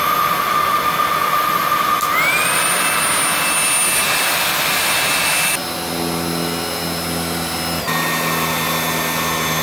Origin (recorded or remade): recorded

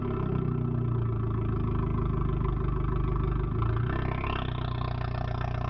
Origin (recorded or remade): recorded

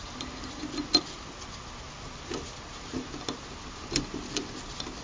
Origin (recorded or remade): recorded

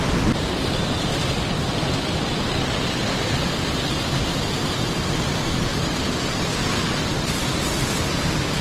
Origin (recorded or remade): remade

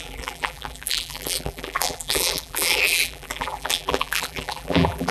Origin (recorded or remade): remade